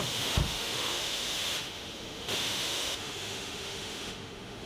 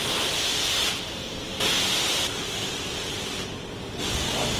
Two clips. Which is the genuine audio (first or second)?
second